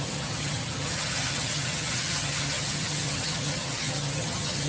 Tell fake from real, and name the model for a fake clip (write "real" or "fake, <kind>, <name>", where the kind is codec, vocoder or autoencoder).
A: fake, vocoder, HiFi-GAN